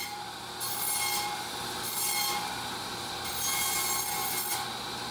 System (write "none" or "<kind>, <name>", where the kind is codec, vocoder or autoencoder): none